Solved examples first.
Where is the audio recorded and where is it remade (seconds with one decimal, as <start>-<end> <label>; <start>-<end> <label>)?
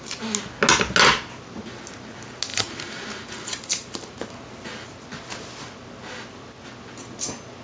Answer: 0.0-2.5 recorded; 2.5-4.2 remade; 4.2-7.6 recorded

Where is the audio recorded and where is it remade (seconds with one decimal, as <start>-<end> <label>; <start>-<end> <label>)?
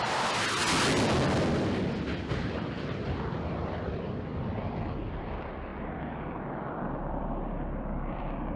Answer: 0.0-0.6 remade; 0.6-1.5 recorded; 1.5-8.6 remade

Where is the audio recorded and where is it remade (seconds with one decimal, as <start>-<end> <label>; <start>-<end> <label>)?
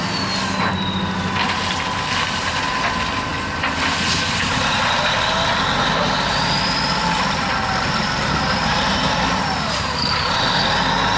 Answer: 0.0-8.6 recorded; 8.6-10.3 remade; 10.3-11.2 recorded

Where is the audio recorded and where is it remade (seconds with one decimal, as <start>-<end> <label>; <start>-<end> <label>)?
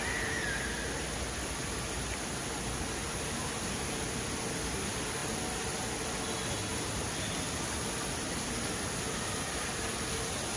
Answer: 0.0-3.0 recorded; 3.0-4.5 remade; 4.5-10.6 recorded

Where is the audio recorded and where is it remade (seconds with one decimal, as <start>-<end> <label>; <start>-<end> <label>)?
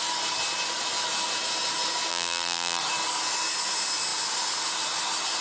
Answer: 0.0-2.1 recorded; 2.1-2.8 remade; 2.8-5.4 recorded